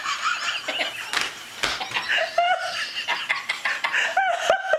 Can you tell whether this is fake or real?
real